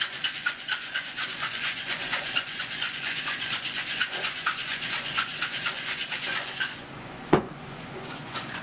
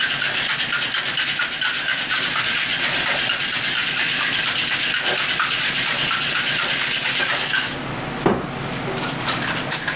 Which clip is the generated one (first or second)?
first